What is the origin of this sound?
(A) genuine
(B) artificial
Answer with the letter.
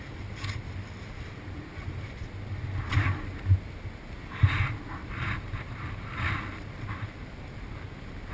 A